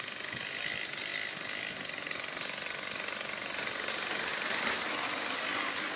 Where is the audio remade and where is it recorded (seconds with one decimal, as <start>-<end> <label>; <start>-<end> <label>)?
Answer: 0.0-6.0 recorded